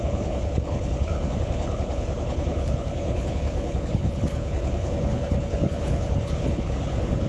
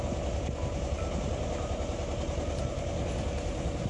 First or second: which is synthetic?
first